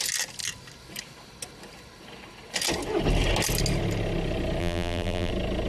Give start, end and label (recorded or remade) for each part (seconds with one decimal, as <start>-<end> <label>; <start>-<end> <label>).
0.0-4.6 recorded; 4.6-5.3 remade; 5.3-5.7 recorded